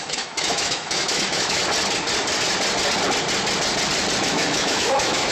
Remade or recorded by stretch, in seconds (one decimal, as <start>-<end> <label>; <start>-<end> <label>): 0.0-1.6 remade; 1.6-4.2 recorded; 4.2-5.3 remade